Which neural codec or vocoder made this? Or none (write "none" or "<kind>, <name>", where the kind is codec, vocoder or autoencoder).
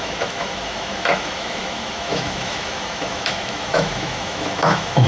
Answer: autoencoder, DAC-VAE